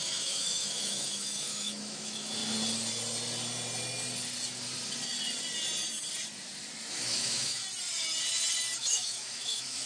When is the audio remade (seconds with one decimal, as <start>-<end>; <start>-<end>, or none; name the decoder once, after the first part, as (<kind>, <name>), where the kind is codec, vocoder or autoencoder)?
0.0-2.4 (autoencoder, DAC-VAE); 6.9-7.6; 8.8-9.9

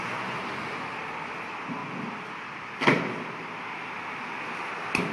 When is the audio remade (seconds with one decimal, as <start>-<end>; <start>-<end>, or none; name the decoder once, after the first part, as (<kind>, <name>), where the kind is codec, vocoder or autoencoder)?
none

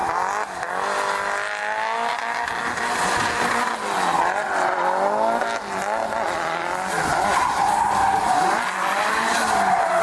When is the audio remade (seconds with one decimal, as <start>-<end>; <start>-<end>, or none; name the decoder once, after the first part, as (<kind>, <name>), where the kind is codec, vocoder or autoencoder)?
none

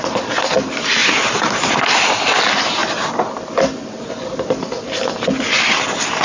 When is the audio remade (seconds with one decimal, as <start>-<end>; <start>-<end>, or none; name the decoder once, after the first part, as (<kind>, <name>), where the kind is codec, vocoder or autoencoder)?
1.0-1.8 (vocoder, BigVGAN v2)

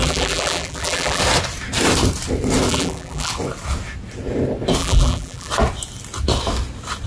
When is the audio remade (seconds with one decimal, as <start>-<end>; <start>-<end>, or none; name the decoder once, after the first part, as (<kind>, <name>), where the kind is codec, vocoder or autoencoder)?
0.0-1.2 (vocoder, BigVGAN v2); 2.7-3.3; 4.8-5.5

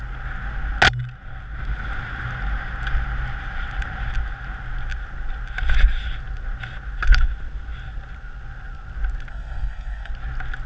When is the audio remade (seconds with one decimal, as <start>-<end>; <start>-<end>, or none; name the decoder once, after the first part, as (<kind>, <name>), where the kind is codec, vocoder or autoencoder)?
9.3-10.1 (codec, SNAC)

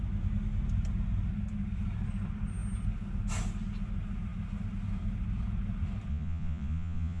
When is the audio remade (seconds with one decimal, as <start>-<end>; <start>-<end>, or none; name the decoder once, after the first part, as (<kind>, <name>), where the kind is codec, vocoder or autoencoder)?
6.1-7.2 (vocoder, Vocos)